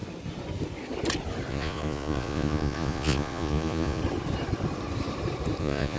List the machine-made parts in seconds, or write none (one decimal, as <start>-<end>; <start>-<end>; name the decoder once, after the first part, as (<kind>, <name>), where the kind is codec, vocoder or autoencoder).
1.5-4.0 (vocoder, Vocos); 5.6-6.0